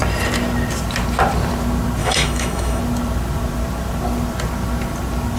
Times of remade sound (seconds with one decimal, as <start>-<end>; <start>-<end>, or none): 2.0-2.8